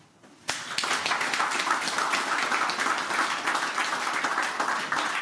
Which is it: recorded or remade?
recorded